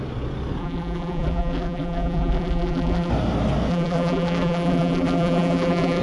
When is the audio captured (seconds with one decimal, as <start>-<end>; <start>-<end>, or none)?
0.0-0.6; 3.1-3.7